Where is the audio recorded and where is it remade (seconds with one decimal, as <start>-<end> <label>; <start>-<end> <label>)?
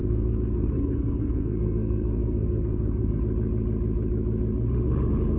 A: 0.0-3.2 remade; 3.2-5.4 recorded